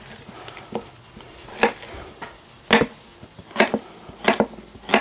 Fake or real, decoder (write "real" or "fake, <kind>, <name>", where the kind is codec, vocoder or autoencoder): real